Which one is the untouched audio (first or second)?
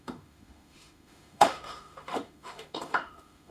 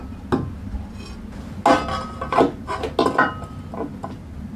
second